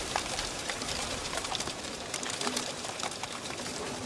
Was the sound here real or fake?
fake